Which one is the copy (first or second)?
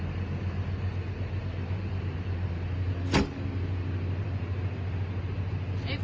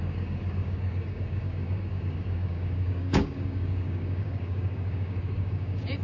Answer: second